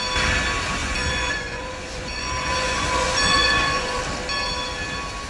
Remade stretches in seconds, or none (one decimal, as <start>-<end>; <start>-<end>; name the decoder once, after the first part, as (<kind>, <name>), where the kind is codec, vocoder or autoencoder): 0.8-4.0 (vocoder, Vocos)

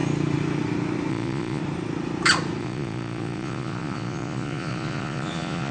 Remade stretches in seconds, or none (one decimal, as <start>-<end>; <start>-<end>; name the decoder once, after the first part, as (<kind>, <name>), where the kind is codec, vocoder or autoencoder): 1.1-1.6 (vocoder, Vocos); 2.6-5.7

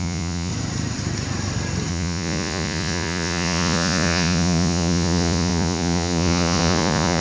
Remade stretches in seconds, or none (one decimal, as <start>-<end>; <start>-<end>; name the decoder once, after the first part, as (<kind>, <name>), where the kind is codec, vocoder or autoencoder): 0.0-0.5 (vocoder, Vocos); 1.9-7.2